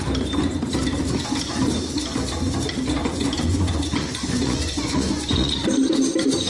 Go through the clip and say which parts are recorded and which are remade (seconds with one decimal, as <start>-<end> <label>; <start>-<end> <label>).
0.0-3.0 recorded; 3.0-5.6 remade; 5.6-6.5 recorded